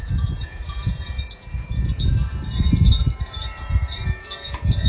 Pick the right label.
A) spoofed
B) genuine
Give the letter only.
A